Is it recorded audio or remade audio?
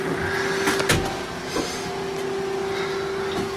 recorded